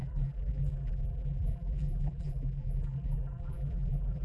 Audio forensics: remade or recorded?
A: remade